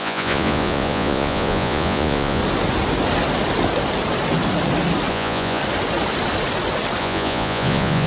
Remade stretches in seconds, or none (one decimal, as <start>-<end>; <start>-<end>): 0.0-2.4; 5.1-5.6; 7.0-8.1